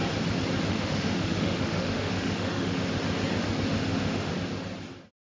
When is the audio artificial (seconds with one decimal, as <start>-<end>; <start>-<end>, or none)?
0.7-2.8; 3.8-4.3